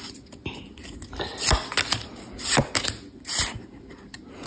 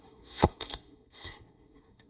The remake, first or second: second